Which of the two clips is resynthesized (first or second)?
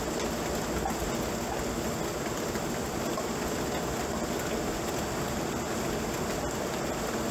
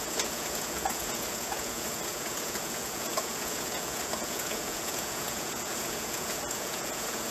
second